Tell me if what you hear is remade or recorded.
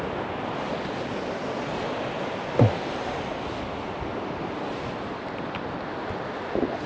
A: recorded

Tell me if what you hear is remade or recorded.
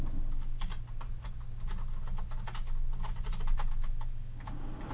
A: recorded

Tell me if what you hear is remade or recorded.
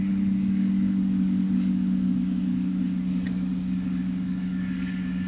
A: remade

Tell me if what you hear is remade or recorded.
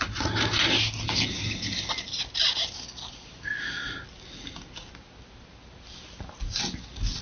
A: recorded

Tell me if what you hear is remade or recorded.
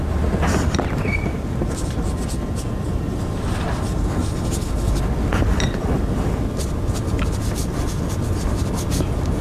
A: remade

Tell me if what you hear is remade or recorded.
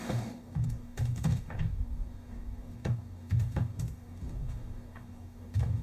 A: remade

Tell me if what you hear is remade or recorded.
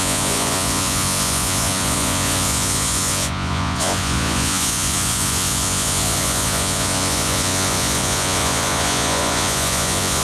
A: remade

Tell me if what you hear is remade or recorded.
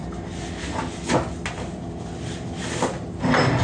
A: recorded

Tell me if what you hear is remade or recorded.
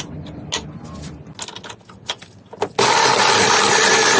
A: recorded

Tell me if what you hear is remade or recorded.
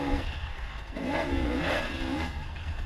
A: remade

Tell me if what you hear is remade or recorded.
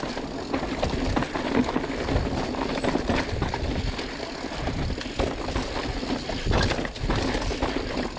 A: recorded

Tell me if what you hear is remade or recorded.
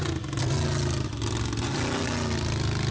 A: recorded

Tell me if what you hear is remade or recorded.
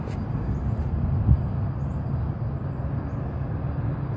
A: recorded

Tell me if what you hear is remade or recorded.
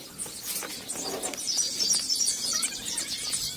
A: recorded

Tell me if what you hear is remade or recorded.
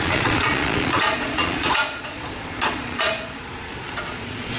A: remade